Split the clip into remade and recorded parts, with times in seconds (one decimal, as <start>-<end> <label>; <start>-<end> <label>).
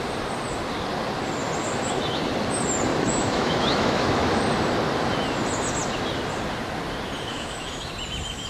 0.0-2.9 recorded; 2.9-4.4 remade; 4.4-7.3 recorded; 7.3-7.9 remade; 7.9-8.5 recorded